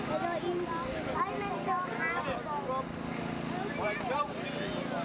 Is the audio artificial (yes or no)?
no